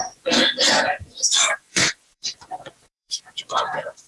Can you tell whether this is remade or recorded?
remade